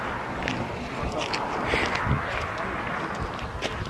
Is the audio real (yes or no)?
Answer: yes